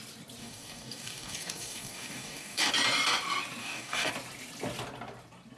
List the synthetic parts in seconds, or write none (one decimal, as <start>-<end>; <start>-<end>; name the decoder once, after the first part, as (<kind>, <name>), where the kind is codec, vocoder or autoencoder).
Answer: 0.4-2.7 (codec, DAC); 3.6-4.1